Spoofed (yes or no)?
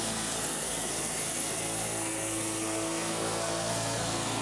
yes